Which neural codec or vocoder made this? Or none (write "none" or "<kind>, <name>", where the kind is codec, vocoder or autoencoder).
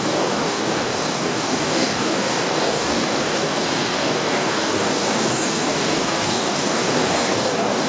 codec, DAC